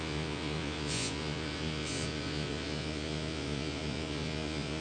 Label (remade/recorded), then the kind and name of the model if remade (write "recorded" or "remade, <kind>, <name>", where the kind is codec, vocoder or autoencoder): remade, vocoder, Vocos